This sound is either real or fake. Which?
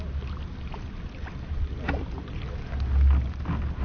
real